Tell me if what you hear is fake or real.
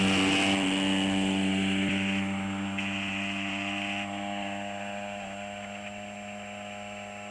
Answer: real